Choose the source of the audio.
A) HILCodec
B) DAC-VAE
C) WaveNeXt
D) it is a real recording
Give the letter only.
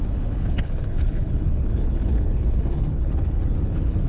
A